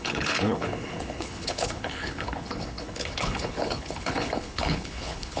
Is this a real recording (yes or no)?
no